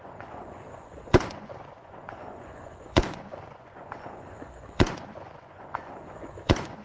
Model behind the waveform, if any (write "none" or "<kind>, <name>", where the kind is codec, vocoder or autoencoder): vocoder, Vocos